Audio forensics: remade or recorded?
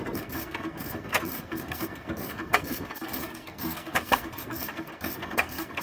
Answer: remade